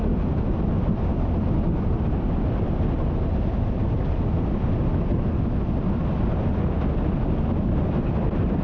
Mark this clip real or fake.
real